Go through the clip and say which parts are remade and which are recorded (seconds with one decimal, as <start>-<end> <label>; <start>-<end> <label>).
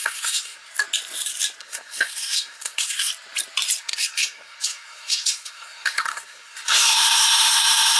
0.0-0.7 remade; 0.7-1.6 recorded; 1.6-3.1 remade; 3.1-3.8 recorded; 3.8-8.0 remade